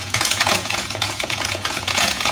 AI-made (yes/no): yes